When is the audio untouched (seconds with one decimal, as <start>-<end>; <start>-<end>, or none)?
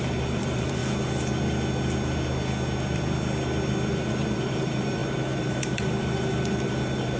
0.8-3.9